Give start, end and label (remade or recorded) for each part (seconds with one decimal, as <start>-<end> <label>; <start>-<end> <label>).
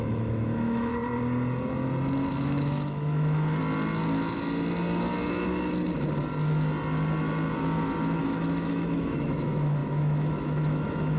0.0-0.9 remade; 0.9-2.3 recorded; 2.3-3.6 remade; 3.6-8.2 recorded; 8.2-11.2 remade